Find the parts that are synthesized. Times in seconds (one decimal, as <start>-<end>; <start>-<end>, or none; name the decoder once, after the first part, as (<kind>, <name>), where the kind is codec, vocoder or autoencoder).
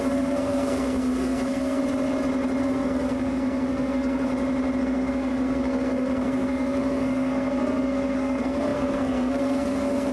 0.0-1.8 (codec, SNAC); 2.6-4.3; 4.8-10.1